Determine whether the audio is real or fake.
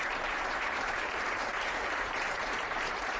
fake